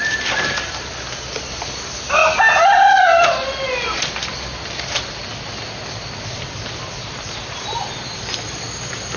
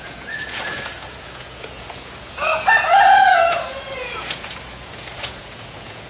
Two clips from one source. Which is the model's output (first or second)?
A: second